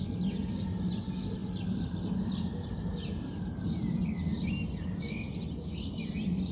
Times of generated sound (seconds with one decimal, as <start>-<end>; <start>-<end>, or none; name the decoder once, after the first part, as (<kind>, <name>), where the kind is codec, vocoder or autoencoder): none